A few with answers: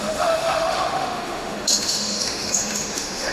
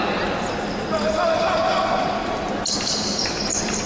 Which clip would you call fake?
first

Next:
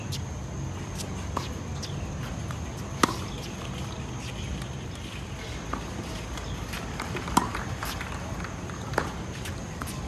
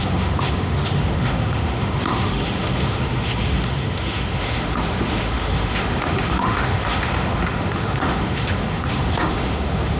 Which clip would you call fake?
second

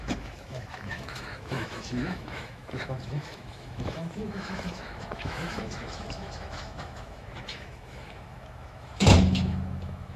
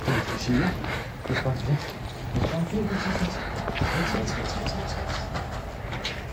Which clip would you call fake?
first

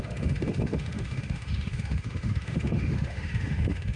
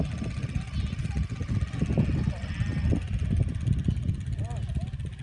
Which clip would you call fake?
first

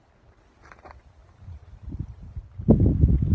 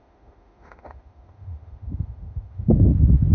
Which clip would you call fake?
second